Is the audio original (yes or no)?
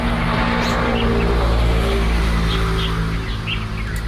yes